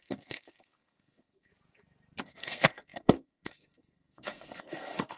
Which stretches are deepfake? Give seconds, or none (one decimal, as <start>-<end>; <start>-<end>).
0.0-1.5; 2.2-5.2

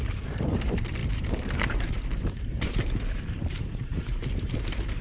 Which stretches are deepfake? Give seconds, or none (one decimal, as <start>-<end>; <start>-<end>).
0.0-5.0

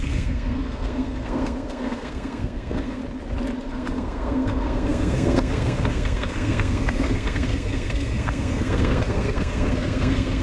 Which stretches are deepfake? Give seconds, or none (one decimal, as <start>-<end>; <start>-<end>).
0.0-3.0; 3.7-10.4